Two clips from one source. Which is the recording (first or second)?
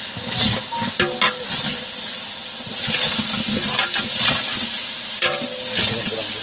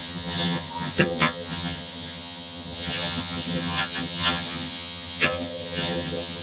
first